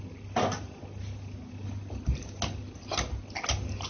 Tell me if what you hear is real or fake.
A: real